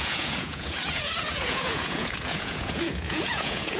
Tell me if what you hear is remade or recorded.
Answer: remade